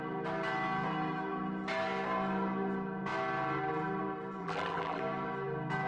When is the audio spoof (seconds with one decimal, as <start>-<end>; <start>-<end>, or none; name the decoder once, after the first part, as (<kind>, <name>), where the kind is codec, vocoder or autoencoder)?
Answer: 4.4-5.0 (vocoder, BigVGAN v2)